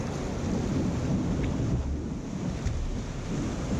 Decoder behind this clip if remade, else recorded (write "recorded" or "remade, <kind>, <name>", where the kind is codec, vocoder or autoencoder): recorded